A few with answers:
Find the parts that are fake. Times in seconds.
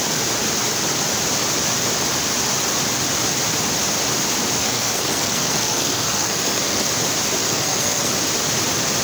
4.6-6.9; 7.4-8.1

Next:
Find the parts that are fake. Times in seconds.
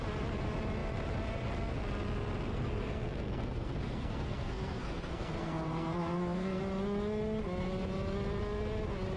2.5-6.6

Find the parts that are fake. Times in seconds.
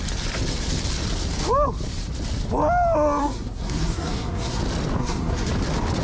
3.2-4.6; 5.0-5.5